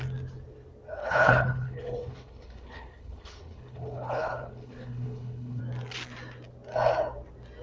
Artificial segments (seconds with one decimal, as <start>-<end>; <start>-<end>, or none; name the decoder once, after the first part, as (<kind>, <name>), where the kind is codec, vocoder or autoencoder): 1.0-5.6 (codec, HILCodec)